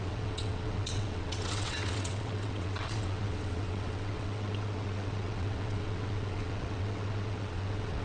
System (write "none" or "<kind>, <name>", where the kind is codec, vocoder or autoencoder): vocoder, WaveNeXt